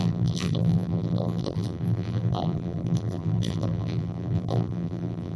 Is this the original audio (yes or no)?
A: no